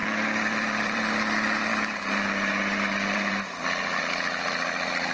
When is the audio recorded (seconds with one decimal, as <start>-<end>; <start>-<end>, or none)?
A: 1.0-1.7; 4.0-5.1